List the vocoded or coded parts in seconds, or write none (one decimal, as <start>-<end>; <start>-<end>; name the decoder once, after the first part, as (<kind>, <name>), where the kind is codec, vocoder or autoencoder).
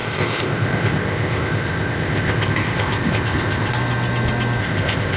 0.0-3.7 (codec, ZipCodec); 4.6-5.2